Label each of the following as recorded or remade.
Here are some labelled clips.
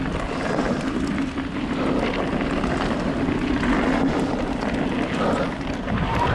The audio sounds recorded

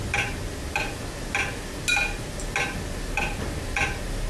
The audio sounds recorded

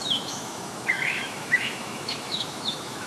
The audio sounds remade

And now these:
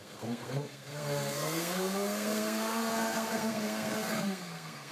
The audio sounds remade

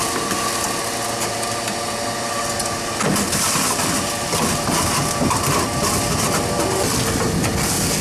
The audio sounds recorded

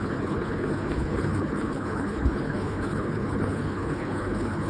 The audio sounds remade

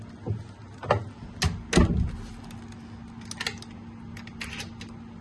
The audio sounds recorded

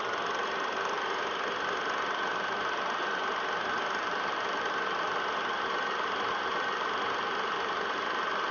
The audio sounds recorded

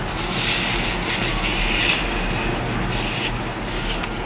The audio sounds recorded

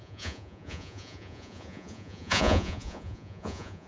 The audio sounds remade